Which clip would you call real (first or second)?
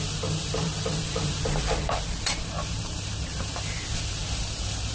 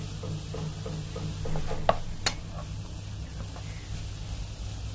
second